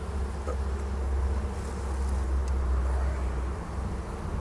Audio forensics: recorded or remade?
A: recorded